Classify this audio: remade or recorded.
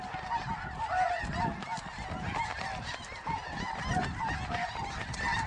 recorded